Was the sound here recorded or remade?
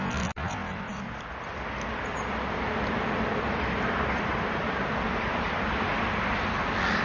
recorded